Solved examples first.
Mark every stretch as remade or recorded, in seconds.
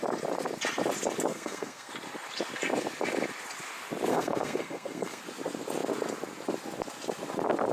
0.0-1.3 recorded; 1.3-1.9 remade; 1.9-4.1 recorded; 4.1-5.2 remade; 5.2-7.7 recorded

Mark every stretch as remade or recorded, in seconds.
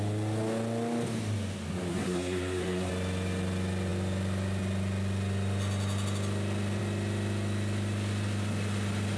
0.0-1.9 recorded; 1.9-2.9 remade; 2.9-9.2 recorded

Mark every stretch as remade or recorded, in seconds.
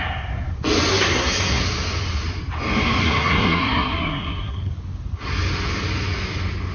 0.0-0.9 recorded; 0.9-1.6 remade; 1.6-3.0 recorded; 3.0-4.7 remade; 4.7-6.7 recorded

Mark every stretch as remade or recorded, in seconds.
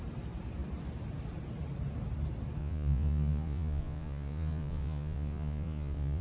0.0-2.6 recorded; 2.6-6.2 remade